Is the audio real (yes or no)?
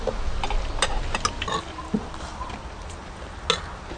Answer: yes